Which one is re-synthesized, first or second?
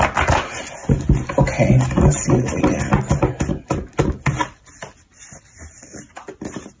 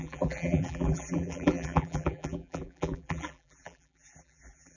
second